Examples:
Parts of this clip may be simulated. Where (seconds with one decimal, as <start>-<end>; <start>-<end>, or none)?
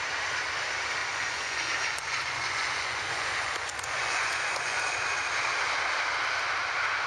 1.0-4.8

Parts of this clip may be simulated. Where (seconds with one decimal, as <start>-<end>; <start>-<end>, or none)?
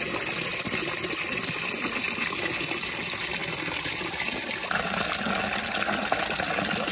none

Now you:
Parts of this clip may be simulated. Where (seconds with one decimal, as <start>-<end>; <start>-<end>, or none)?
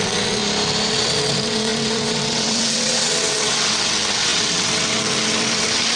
0.0-0.4; 0.9-6.0